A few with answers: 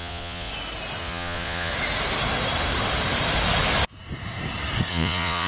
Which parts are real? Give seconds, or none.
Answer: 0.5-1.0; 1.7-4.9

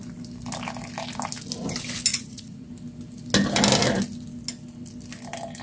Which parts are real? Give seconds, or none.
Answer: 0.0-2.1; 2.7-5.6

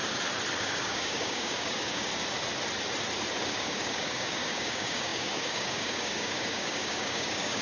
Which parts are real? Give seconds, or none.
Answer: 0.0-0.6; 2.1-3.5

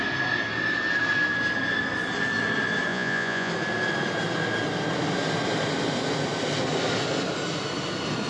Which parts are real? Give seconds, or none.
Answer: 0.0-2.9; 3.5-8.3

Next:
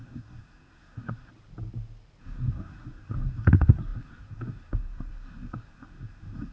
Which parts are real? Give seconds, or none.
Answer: 1.3-2.2

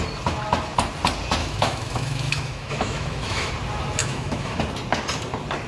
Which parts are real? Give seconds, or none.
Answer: 0.0-1.4; 3.5-4.0; 4.6-5.7

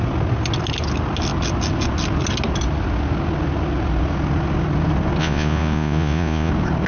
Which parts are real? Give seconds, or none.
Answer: 0.0-5.2; 6.5-6.9